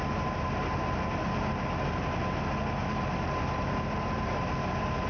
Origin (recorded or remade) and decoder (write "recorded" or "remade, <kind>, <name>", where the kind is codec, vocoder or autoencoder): recorded